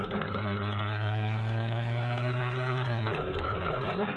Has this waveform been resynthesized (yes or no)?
yes